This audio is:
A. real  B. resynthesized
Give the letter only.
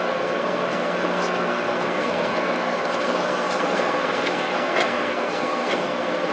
B